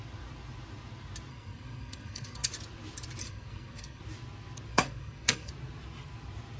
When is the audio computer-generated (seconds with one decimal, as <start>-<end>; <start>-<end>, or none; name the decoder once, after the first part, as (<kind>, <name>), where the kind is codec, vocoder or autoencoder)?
1.3-2.5 (codec, SNAC); 3.2-4.0; 4.7-5.5